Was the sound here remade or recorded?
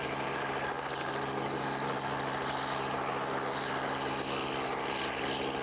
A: recorded